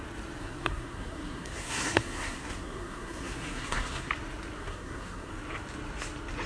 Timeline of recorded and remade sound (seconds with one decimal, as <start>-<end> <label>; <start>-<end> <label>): 0.0-0.4 recorded; 0.4-4.1 remade; 4.1-4.6 recorded; 4.6-5.3 remade; 5.3-6.5 recorded